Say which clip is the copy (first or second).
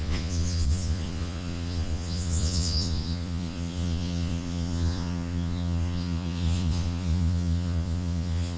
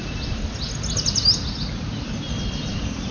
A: first